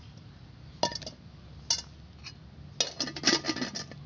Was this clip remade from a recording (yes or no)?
no